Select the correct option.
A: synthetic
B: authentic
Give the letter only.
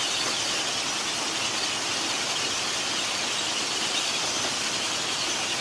B